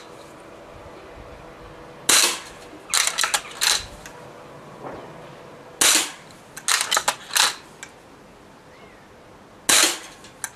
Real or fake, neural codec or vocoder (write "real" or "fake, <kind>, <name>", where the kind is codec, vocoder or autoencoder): real